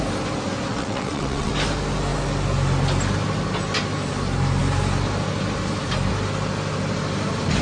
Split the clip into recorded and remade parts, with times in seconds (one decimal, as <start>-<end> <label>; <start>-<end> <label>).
0.0-0.7 recorded; 0.7-1.5 remade; 1.5-7.6 recorded